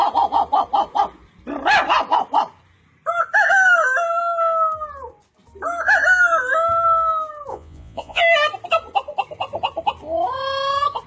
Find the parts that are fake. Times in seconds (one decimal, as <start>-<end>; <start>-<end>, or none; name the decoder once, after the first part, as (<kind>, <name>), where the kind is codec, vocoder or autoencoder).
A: 7.5-8.2 (vocoder, Vocos)